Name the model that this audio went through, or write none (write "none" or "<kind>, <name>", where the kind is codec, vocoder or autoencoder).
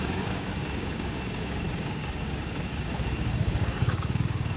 codec, DAC